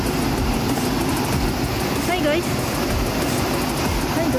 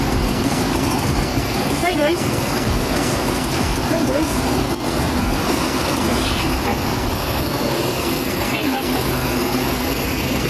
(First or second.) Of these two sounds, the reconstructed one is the second